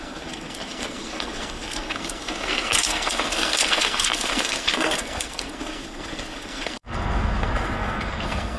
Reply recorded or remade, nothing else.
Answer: remade